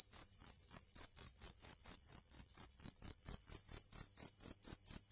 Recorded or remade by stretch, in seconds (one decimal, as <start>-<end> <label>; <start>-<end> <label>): 0.0-0.4 recorded; 0.4-3.5 remade; 3.5-5.1 recorded